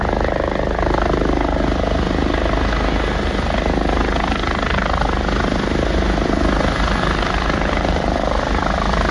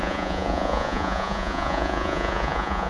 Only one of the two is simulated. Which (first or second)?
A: second